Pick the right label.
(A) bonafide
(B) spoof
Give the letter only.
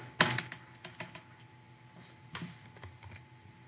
A